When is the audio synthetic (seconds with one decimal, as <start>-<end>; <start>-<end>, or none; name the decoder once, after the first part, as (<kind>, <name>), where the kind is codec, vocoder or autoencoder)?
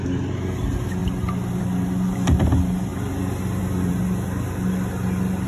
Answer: none